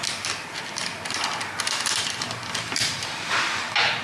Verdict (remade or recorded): recorded